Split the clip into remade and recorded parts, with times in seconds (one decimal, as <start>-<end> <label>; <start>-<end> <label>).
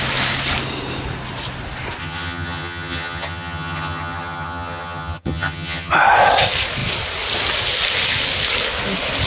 0.0-2.0 recorded; 2.0-5.9 remade; 5.9-9.3 recorded